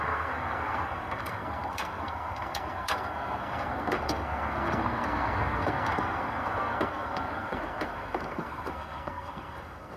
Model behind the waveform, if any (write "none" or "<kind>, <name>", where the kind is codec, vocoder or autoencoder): codec, SNAC